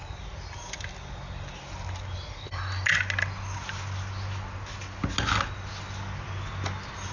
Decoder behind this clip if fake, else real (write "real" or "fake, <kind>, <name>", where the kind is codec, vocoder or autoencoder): real